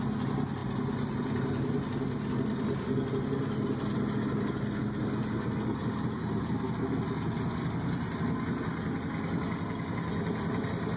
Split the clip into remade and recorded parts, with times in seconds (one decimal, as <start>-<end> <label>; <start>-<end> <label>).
0.0-5.8 recorded; 5.8-6.4 remade; 6.4-11.0 recorded